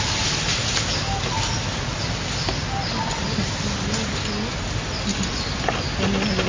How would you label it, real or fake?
real